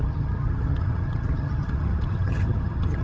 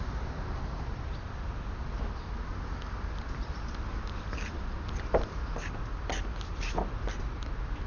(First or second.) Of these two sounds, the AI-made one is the first